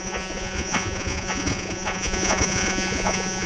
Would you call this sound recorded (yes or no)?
no